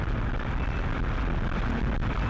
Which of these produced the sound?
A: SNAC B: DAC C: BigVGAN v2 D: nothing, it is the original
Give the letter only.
D